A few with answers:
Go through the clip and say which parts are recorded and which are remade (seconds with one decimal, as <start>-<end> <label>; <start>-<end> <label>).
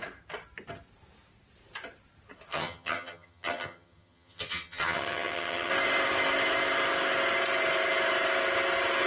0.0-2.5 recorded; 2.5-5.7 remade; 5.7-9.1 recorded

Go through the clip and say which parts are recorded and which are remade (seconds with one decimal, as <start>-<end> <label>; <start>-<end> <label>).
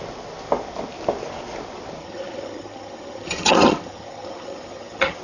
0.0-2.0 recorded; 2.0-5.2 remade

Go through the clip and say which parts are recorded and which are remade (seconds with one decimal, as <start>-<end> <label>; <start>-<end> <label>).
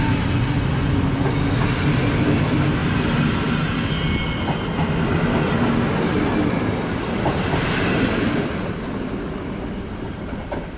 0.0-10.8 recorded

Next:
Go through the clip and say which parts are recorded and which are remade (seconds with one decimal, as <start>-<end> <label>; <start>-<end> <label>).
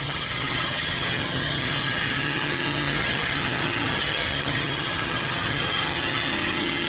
0.0-6.9 remade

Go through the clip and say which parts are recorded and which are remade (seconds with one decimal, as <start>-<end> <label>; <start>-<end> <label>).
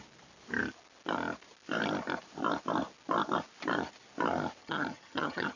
0.0-4.6 recorded; 4.6-5.6 remade